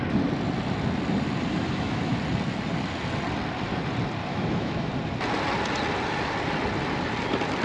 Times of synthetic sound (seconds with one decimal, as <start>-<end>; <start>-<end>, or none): 1.5-2.1; 4.3-4.9